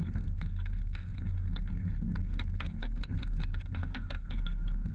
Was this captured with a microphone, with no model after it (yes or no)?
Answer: no